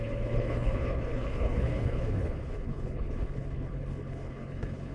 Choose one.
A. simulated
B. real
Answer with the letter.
A